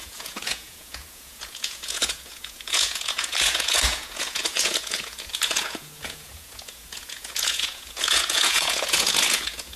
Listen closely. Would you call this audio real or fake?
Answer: fake